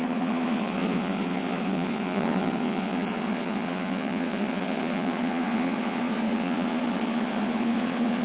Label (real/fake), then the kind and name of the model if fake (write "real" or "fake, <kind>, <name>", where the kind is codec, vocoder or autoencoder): fake, vocoder, Vocos